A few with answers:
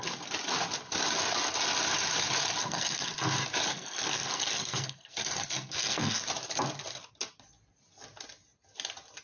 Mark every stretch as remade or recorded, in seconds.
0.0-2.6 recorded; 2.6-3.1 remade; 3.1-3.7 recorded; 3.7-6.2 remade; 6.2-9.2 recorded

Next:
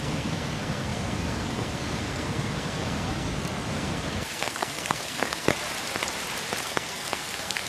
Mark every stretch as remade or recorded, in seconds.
0.0-5.5 remade; 5.5-6.6 recorded; 6.6-7.7 remade

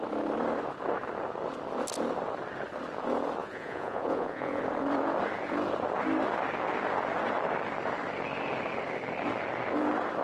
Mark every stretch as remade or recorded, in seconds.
0.0-3.4 recorded; 3.4-4.6 remade; 4.6-10.2 recorded

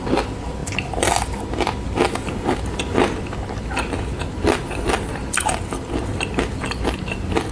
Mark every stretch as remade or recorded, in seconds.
0.0-7.5 recorded

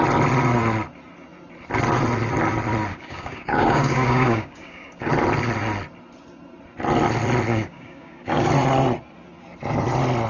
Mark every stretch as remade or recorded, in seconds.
0.0-2.9 recorded; 2.9-5.1 remade; 5.1-7.5 recorded; 7.5-8.5 remade; 8.5-10.3 recorded

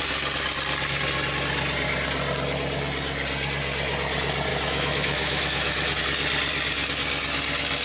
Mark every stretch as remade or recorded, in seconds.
0.0-4.5 recorded; 4.5-6.0 remade; 6.0-7.8 recorded